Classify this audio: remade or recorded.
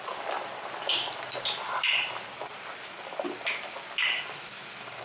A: recorded